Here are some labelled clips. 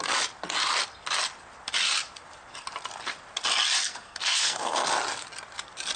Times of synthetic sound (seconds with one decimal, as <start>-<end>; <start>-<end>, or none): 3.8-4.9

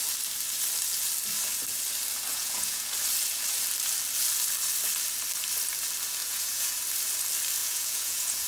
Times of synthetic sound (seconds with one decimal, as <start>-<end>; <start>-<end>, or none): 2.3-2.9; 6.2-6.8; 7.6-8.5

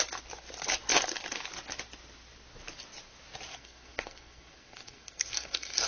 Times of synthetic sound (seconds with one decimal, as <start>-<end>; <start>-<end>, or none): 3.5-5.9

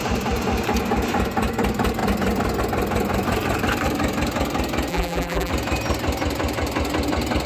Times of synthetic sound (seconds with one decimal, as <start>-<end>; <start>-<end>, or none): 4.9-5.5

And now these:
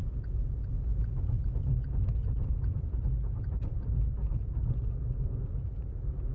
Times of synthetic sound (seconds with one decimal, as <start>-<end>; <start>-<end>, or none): 0.0-3.8; 4.2-5.4

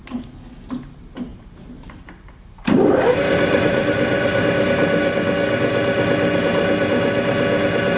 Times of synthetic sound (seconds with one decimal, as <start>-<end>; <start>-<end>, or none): 1.3-4.6

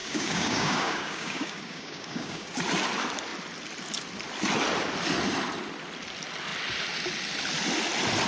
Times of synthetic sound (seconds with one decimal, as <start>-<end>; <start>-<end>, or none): 0.0-2.5

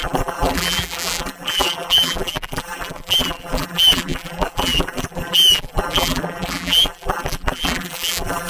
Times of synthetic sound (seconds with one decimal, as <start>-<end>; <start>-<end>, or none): 0.0-8.5